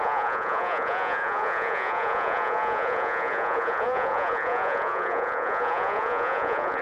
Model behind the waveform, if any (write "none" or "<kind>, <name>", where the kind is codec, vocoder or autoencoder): vocoder, Vocos